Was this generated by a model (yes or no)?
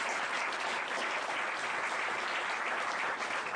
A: no